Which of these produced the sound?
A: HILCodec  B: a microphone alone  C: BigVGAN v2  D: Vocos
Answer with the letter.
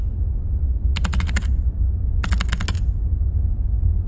B